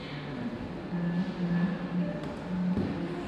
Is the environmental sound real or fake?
real